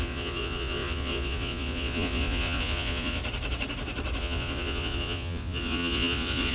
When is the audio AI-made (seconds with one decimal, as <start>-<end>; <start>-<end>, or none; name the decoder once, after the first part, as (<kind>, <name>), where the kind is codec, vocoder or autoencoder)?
0.0-3.2 (vocoder, Vocos); 4.2-6.5